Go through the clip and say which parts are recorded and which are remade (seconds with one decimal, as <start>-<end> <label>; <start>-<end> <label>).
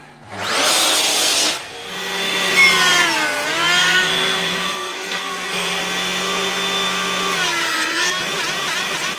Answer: 0.0-1.1 recorded; 1.1-2.5 remade; 2.5-3.8 recorded; 3.8-5.8 remade; 5.8-7.6 recorded; 7.6-8.1 remade; 8.1-9.2 recorded